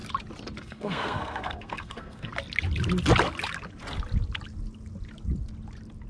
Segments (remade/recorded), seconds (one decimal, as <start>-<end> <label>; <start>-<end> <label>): 0.0-0.6 recorded; 0.6-2.3 remade; 2.3-6.1 recorded

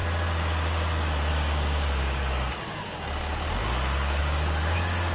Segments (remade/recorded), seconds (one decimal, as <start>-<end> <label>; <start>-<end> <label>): 0.0-1.3 recorded; 1.3-2.2 remade; 2.2-4.2 recorded; 4.2-5.1 remade